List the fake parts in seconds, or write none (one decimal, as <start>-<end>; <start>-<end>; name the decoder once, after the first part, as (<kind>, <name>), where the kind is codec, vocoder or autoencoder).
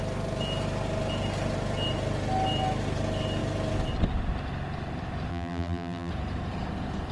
5.3-6.1 (vocoder, BigVGAN v2)